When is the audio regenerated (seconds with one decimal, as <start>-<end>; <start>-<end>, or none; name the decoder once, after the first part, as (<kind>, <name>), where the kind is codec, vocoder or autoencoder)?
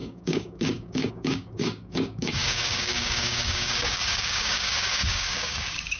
0.0-6.0 (codec, DAC)